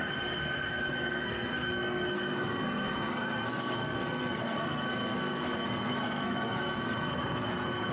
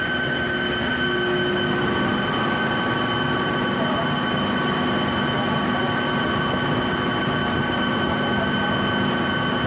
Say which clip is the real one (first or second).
second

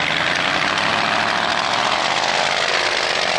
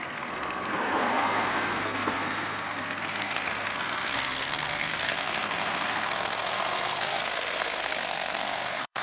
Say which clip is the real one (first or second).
first